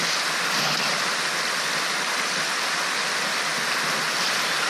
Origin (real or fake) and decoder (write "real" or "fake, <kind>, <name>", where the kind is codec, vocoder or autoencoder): real